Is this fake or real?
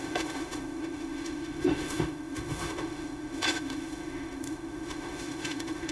fake